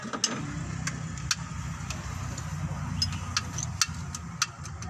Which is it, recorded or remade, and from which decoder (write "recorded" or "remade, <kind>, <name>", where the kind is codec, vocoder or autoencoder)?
recorded